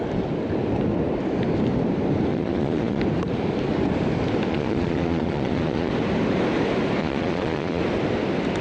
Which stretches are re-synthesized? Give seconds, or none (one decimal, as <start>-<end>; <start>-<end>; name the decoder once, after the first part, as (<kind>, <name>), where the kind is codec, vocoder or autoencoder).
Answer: 2.3-3.0 (vocoder, Vocos); 4.5-5.9; 7.0-7.8